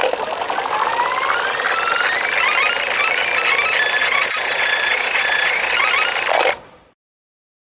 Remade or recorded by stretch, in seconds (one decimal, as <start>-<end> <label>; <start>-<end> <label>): 0.0-4.0 recorded; 4.0-5.7 remade; 5.7-7.6 recorded